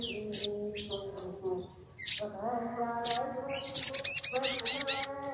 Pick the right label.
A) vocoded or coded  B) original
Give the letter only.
B